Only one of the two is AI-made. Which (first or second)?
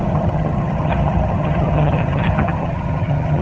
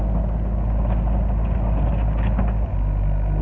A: first